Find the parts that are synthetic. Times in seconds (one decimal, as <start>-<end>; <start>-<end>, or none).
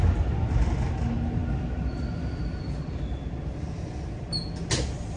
none